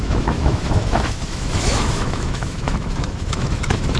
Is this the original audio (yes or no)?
no